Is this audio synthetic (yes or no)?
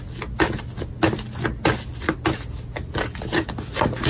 no